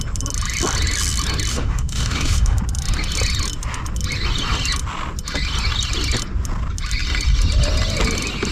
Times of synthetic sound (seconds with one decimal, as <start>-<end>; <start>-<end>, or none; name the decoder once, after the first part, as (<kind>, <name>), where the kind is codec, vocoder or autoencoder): 1.5-2.6 (autoencoder, DAC-VAE)

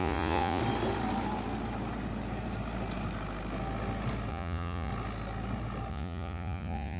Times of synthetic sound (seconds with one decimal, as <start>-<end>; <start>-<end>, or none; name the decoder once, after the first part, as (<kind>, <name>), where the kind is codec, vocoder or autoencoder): 0.0-0.6 (vocoder, Vocos); 4.3-4.9; 5.9-7.0

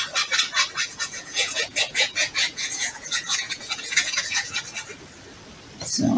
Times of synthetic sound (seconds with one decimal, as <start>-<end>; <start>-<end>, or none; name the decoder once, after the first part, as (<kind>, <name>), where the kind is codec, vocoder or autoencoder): 0.9-4.6 (vocoder, Vocos)

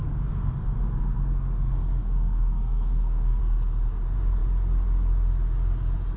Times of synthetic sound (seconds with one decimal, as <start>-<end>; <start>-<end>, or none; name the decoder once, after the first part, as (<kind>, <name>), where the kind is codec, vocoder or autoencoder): 0.0-3.4 (codec, SNAC)

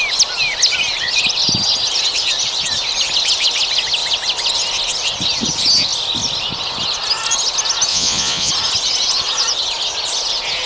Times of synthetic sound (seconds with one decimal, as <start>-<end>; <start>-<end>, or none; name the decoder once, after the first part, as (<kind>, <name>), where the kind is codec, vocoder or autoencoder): 7.9-8.5 (vocoder, Vocos)

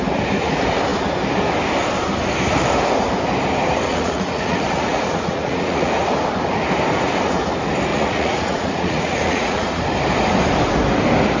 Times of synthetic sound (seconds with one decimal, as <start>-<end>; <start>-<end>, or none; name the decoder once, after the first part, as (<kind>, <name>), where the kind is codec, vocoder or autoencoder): 3.9-5.9 (vocoder, Vocos); 7.9-9.8

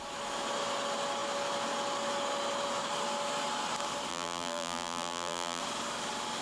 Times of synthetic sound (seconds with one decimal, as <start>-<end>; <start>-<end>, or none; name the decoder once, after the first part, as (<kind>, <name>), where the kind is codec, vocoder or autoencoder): 4.1-5.6 (vocoder, BigVGAN v2)

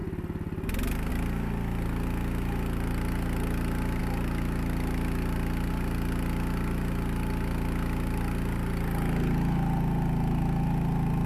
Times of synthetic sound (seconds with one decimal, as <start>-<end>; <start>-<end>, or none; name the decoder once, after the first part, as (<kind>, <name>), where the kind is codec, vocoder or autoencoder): none